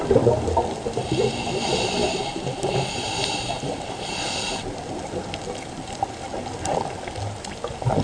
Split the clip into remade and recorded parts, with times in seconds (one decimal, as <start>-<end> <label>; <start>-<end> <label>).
0.0-6.3 remade; 6.3-7.6 recorded; 7.6-8.0 remade